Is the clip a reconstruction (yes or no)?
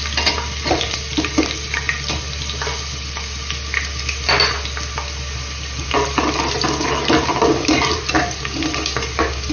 no